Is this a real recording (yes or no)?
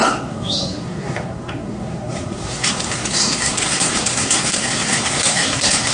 no